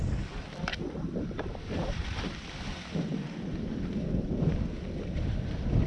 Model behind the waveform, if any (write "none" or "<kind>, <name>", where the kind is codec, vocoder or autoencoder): vocoder, BigVGAN v2